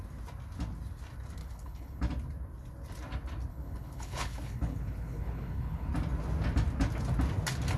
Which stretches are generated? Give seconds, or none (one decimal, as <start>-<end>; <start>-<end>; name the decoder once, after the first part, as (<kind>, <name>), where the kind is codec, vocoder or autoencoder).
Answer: 1.4-2.0 (codec, HILCodec); 3.5-5.9

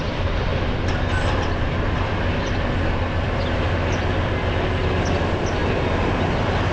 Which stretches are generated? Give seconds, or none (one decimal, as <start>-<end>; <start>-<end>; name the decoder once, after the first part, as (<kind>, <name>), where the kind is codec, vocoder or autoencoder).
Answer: none

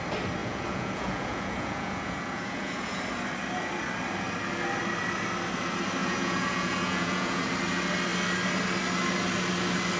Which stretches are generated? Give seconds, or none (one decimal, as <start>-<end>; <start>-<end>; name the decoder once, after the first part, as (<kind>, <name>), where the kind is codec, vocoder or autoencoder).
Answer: 0.4-3.0 (vocoder, Vocos); 6.0-7.4